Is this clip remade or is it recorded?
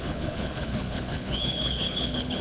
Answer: remade